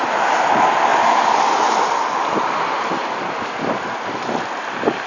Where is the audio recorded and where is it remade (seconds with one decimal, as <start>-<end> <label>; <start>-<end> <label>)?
0.0-5.1 recorded